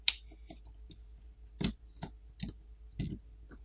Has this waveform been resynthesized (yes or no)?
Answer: no